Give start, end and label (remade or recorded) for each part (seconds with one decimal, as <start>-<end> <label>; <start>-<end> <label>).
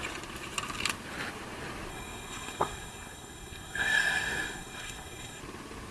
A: 0.0-1.9 recorded; 1.9-5.4 remade; 5.4-5.9 recorded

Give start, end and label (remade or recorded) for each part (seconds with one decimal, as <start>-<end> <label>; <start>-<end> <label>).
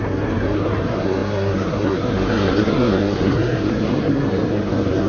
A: 0.0-5.1 remade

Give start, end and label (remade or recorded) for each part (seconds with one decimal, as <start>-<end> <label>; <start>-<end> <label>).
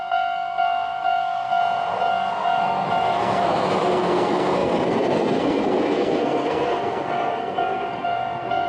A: 0.0-1.6 remade; 1.6-2.1 recorded; 2.1-8.7 remade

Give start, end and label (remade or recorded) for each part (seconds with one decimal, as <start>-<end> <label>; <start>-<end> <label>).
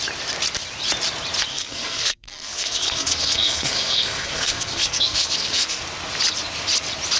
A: 0.0-1.5 recorded; 1.5-5.8 remade; 5.8-7.2 recorded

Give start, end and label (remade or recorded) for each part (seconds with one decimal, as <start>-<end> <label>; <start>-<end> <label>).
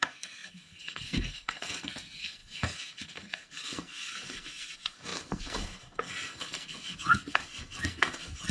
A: 0.0-8.5 remade